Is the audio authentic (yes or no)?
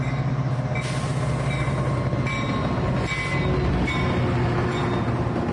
yes